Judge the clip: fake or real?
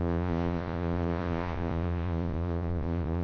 fake